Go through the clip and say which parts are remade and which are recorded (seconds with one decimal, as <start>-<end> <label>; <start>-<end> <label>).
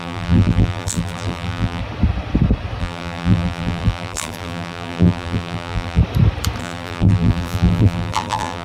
0.0-1.8 remade; 1.8-2.8 recorded; 2.8-6.0 remade; 6.0-6.6 recorded; 6.6-8.6 remade